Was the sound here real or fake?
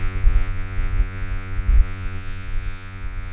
fake